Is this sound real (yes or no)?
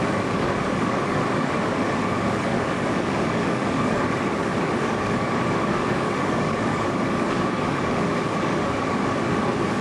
no